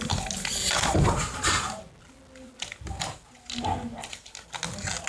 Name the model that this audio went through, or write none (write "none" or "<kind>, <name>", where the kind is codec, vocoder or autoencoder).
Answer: none